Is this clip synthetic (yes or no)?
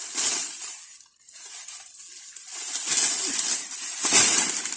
yes